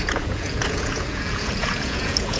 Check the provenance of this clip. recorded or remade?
remade